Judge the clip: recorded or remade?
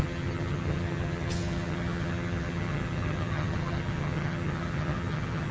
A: remade